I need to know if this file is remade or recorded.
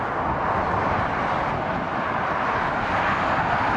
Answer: recorded